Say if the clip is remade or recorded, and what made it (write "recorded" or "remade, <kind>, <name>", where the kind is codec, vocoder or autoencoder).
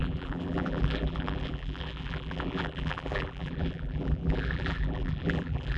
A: remade, vocoder, BigVGAN v2